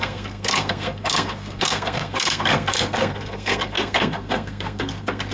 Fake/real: fake